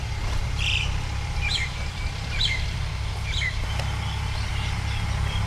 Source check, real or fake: fake